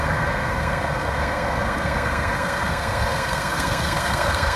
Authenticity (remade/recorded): remade